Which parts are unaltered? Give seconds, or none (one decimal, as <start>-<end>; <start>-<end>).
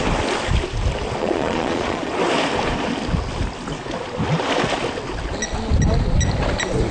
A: 0.0-1.2; 2.1-6.9